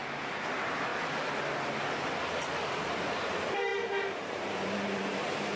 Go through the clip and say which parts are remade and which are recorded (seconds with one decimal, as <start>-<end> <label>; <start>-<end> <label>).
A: 0.0-0.9 remade; 0.9-2.7 recorded; 2.7-5.6 remade